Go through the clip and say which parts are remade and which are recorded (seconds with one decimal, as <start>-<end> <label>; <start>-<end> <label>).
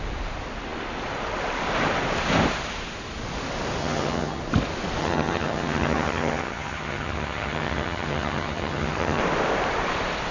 0.0-3.8 recorded; 3.8-4.4 remade; 4.4-5.0 recorded; 5.0-9.2 remade; 9.2-10.3 recorded